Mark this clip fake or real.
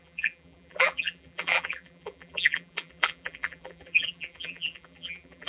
fake